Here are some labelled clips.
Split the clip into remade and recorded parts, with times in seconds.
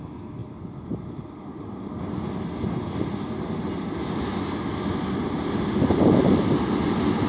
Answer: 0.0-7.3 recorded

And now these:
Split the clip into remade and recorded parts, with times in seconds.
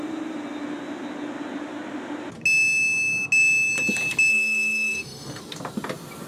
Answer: 0.0-4.3 recorded; 4.3-5.4 remade; 5.4-6.3 recorded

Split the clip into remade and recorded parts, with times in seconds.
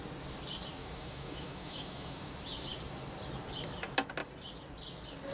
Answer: 0.0-0.8 recorded; 0.8-2.3 remade; 2.3-5.3 recorded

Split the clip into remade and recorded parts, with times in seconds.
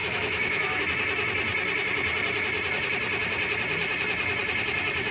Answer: 0.0-0.8 remade; 0.8-5.1 recorded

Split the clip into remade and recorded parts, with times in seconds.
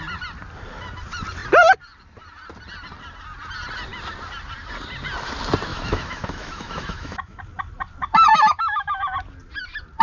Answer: 0.0-5.7 recorded; 5.7-7.4 remade; 7.4-8.3 recorded; 8.3-9.0 remade; 9.0-10.0 recorded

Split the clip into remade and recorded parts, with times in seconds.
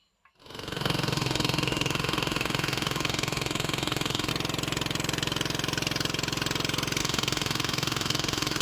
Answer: 0.0-0.4 recorded; 0.4-4.3 remade; 4.3-7.0 recorded; 7.0-8.6 remade